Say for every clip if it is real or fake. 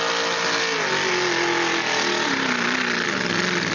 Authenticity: real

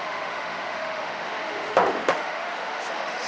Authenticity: fake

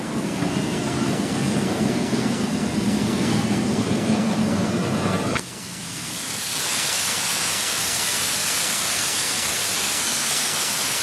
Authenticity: fake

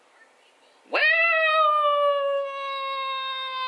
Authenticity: real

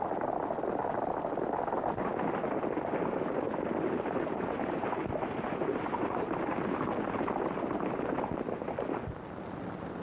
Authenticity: real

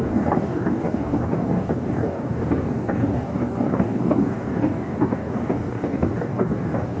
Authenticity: fake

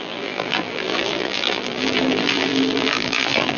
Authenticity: fake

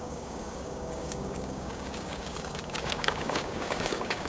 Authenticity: fake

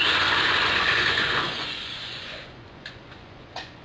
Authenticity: fake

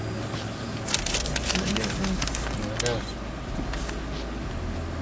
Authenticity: real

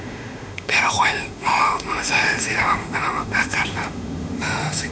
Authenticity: fake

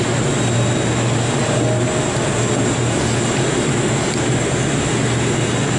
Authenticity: real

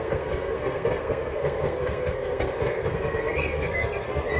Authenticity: fake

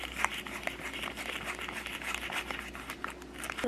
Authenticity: real